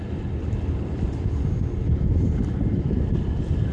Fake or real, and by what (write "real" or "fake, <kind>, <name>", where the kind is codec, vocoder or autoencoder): real